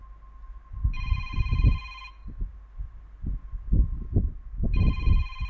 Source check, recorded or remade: recorded